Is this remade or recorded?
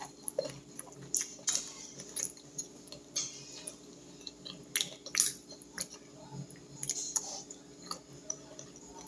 recorded